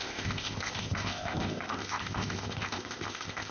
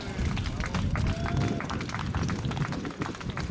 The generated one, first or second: first